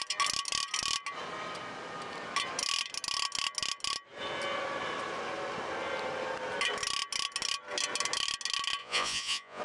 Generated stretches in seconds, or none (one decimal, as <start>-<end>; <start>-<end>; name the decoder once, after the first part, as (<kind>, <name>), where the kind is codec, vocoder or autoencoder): 8.8-9.6 (vocoder, Vocos)